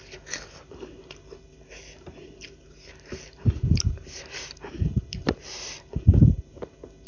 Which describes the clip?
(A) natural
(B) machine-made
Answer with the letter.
B